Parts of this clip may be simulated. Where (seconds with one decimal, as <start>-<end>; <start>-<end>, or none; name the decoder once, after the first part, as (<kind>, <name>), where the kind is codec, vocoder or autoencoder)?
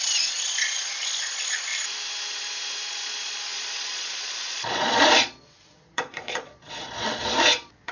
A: 0.0-1.7 (vocoder, Vocos); 2.9-7.9